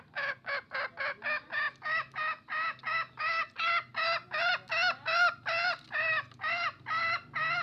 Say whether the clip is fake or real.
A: real